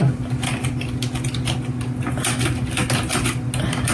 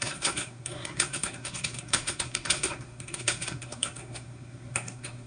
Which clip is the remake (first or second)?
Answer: second